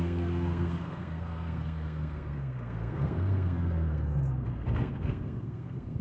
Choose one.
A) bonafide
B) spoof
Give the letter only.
B